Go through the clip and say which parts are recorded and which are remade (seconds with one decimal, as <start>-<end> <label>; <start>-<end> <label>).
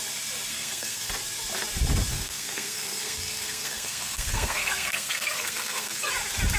0.0-0.5 recorded; 0.5-1.1 remade; 1.1-2.1 recorded; 2.1-6.1 remade; 6.1-6.6 recorded